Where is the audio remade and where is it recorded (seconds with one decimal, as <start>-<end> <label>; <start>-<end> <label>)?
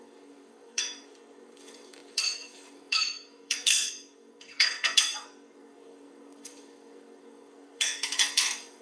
0.0-8.8 remade